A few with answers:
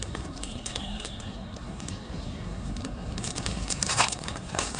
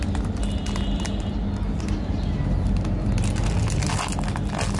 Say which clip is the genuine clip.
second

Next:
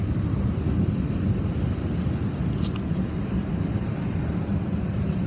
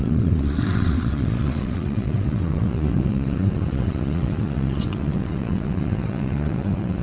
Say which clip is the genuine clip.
first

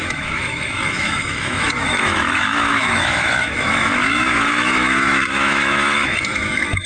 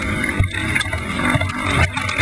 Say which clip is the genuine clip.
second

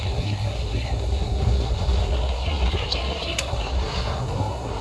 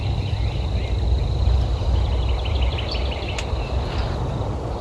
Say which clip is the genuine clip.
second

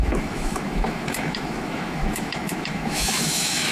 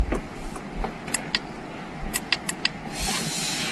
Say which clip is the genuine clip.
second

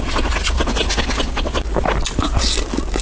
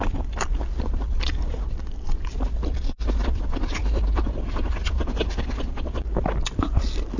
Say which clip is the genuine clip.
first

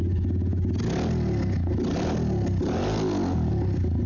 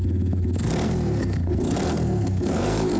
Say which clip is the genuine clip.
first